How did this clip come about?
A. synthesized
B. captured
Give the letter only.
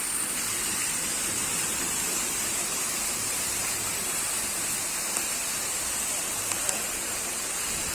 A